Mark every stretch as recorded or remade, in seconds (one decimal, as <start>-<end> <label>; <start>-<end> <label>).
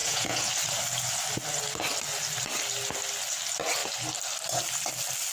0.0-0.5 remade; 0.5-5.3 recorded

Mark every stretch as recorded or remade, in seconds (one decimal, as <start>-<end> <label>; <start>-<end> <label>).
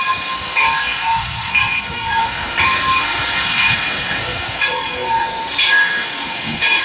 0.0-6.8 remade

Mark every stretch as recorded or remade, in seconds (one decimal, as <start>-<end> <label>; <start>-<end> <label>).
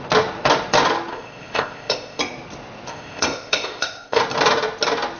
0.0-1.1 recorded; 1.1-2.2 remade; 2.2-2.9 recorded; 2.9-4.2 remade; 4.2-5.2 recorded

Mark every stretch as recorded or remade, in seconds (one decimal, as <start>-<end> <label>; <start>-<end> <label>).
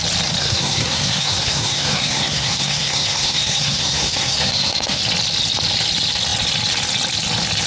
0.0-0.4 recorded; 0.4-5.0 remade; 5.0-7.7 recorded